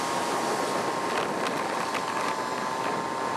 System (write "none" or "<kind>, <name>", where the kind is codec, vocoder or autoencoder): none